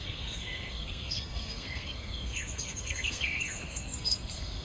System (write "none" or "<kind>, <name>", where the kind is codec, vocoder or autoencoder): codec, SNAC